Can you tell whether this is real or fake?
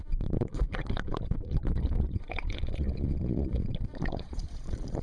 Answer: fake